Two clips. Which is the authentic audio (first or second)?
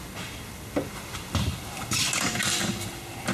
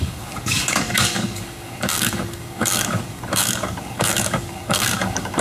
first